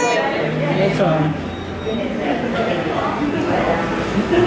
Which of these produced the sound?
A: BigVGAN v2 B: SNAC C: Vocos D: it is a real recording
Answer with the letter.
D